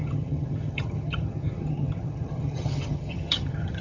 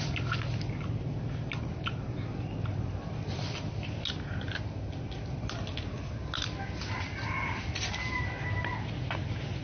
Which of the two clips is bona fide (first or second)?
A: second